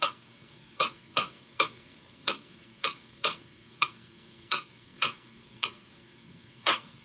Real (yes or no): no